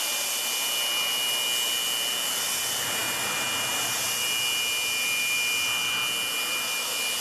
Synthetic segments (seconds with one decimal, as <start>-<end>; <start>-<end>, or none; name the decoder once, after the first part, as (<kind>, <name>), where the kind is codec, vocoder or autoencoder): none

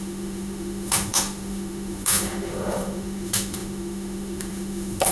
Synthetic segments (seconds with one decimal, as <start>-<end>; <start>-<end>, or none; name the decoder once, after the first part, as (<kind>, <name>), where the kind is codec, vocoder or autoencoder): 0.0-5.1 (autoencoder, DAC-VAE)

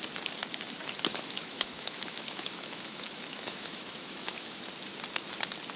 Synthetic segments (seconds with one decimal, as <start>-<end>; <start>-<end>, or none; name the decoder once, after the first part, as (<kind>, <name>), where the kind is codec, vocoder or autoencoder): 1.1-4.6 (autoencoder, DAC-VAE)

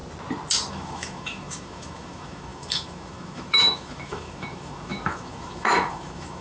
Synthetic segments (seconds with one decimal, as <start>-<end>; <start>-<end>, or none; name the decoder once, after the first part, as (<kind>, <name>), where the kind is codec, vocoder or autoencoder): 0.7-6.4 (autoencoder, DAC-VAE)

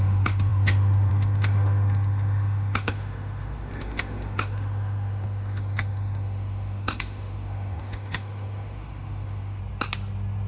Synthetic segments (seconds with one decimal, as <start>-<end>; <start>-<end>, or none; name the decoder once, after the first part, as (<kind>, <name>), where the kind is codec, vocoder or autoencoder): 0.0-9.6 (autoencoder, DAC-VAE)

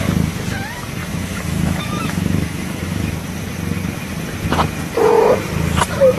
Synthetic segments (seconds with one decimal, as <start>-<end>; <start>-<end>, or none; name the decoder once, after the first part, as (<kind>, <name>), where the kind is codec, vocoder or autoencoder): 1.0-3.1 (autoencoder, DAC-VAE)